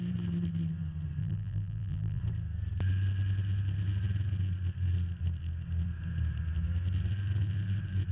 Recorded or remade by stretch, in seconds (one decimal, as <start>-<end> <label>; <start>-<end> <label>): 0.0-1.2 recorded; 1.2-2.2 remade; 2.2-8.1 recorded